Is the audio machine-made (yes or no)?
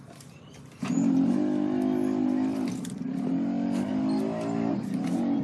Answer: no